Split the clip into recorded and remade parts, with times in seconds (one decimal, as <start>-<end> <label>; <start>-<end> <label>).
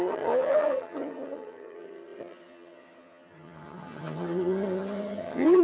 0.0-5.6 remade